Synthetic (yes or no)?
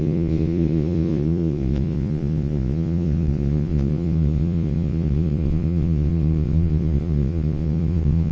yes